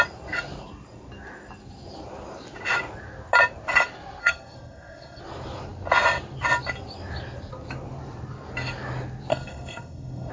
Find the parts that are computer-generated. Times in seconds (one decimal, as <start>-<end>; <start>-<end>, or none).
4.2-5.2; 9.3-10.3